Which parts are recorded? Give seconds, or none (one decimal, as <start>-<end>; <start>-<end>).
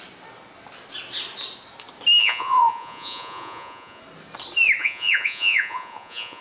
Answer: 0.0-2.2; 4.0-4.8